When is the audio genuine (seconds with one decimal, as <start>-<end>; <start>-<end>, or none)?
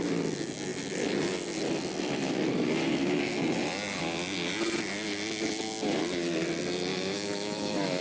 0.0-6.9